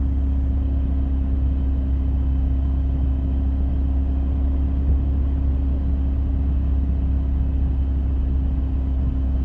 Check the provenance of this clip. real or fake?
real